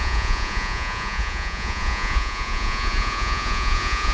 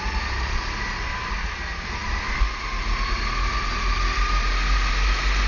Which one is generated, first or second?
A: first